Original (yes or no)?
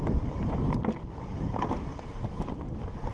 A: yes